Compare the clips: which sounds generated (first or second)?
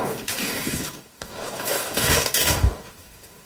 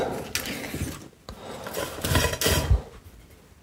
first